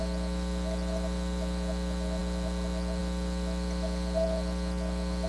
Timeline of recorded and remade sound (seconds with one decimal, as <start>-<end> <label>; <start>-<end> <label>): 0.0-5.3 recorded